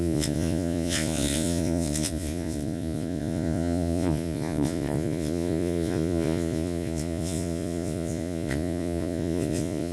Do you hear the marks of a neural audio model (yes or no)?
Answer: yes